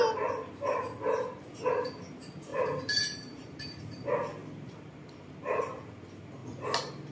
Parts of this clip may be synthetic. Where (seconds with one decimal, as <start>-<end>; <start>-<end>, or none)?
2.5-3.8; 4.4-5.9